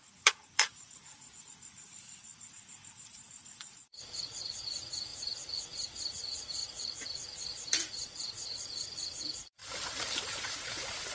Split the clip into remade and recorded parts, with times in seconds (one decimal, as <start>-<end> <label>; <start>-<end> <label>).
0.0-9.6 remade; 9.6-10.4 recorded; 10.4-11.1 remade